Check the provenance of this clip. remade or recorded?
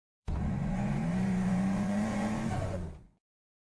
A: remade